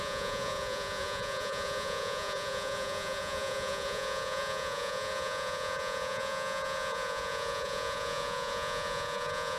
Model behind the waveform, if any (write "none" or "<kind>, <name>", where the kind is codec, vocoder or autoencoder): vocoder, Vocos